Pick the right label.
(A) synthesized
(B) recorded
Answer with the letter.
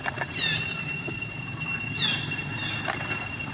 B